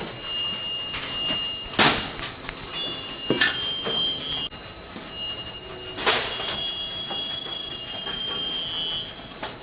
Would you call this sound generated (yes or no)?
no